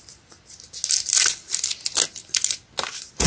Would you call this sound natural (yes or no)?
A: yes